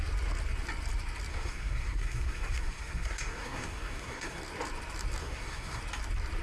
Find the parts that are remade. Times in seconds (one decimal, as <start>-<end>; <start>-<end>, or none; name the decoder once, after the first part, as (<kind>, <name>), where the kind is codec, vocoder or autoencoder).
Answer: 1.3-4.4 (codec, SNAC); 5.2-5.8